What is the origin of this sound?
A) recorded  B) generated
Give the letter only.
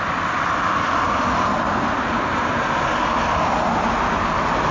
A